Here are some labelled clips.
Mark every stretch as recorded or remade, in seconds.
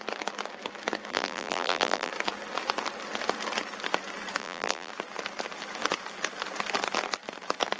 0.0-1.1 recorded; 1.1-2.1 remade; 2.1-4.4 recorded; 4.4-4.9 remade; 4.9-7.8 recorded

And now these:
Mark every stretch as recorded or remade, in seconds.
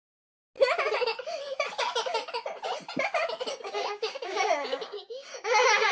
0.0-3.5 recorded; 3.5-5.9 remade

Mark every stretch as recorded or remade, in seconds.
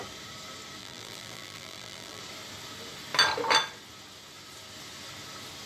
0.0-0.8 recorded; 0.8-2.2 remade; 2.2-5.7 recorded